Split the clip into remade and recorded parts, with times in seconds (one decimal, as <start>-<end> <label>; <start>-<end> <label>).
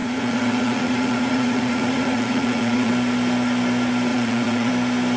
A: 0.0-2.9 remade; 2.9-4.1 recorded; 4.1-4.7 remade; 4.7-5.2 recorded